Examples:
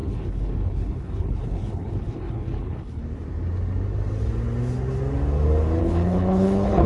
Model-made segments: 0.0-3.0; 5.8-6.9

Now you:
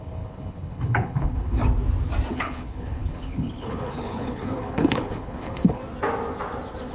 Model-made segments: 0.0-1.6; 2.3-5.8

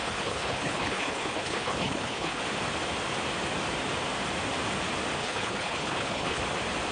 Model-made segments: 0.0-2.4; 5.2-6.4

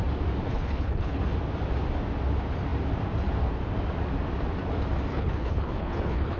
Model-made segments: 0.5-1.2; 5.1-6.4

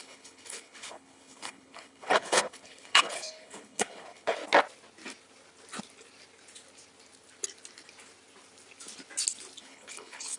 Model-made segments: 0.0-4.4; 9.6-10.4

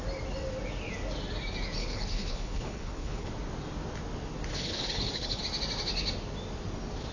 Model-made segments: 1.8-3.3; 4.5-5.4

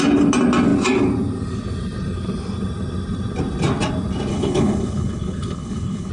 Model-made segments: 4.3-6.1

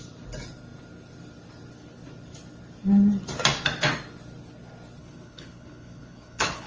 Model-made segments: 5.0-6.7